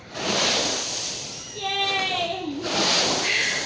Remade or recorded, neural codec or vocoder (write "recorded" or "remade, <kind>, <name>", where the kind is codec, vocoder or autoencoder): recorded